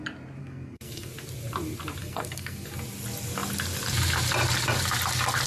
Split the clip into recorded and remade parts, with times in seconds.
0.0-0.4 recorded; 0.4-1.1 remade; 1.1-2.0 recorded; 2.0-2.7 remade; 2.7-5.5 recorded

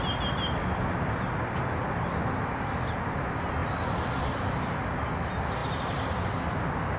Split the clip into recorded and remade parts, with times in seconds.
0.0-7.0 recorded

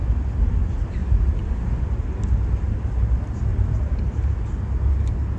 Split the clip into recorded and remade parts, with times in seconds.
0.0-1.0 recorded; 1.0-2.9 remade; 2.9-3.5 recorded; 3.5-4.3 remade; 4.3-5.4 recorded

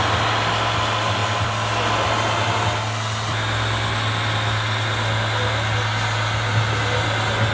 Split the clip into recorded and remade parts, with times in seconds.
0.0-7.5 recorded

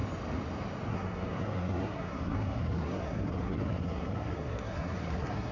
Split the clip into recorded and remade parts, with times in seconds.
0.0-0.9 recorded; 0.9-5.5 remade

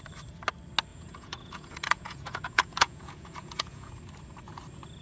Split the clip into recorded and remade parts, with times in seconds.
0.0-0.9 recorded; 0.9-3.9 remade; 3.9-5.0 recorded

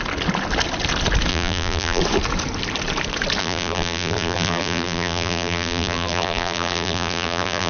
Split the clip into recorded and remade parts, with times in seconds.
0.0-1.3 recorded; 1.3-2.0 remade; 2.0-3.4 recorded; 3.4-7.7 remade